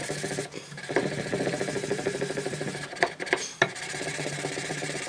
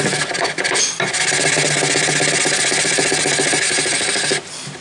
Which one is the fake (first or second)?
first